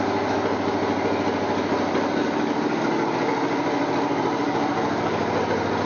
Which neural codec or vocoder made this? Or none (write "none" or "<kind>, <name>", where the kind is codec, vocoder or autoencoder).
none